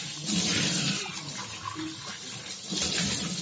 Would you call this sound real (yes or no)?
yes